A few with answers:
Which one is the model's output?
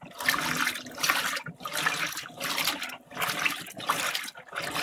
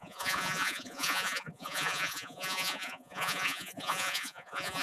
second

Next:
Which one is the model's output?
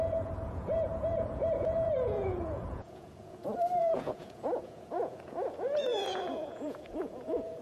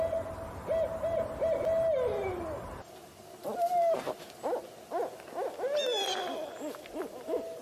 first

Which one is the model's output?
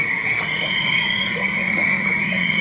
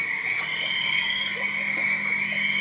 first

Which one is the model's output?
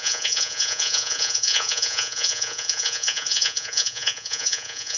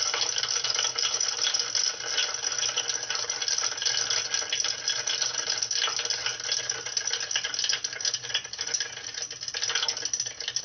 first